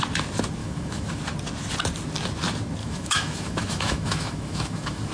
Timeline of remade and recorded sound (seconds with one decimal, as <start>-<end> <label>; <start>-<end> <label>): 0.0-0.6 recorded; 0.6-1.2 remade; 1.2-2.8 recorded; 2.8-5.1 remade